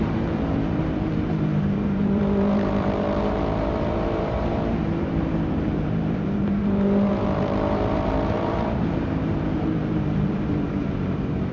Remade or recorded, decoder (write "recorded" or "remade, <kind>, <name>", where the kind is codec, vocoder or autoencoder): remade, vocoder, BigVGAN v2